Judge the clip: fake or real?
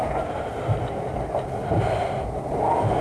real